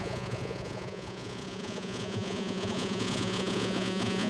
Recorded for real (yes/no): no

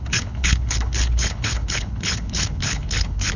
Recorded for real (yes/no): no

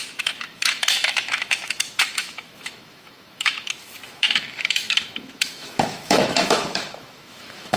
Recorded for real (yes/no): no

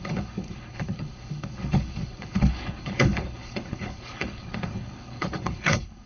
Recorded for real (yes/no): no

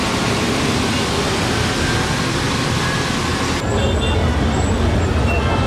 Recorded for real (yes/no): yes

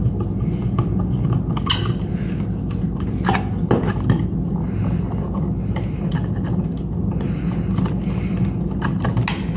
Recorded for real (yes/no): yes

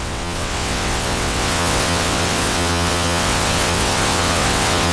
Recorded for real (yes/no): no